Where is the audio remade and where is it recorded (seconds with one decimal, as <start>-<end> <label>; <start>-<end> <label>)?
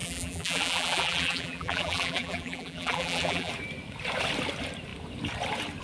0.0-3.5 remade; 3.5-5.8 recorded